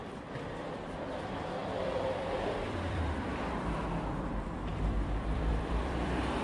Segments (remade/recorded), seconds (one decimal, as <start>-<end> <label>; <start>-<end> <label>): 0.0-1.2 recorded; 1.2-6.4 remade